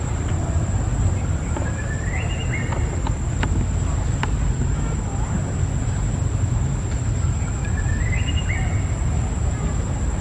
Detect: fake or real real